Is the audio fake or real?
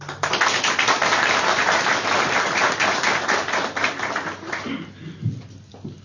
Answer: real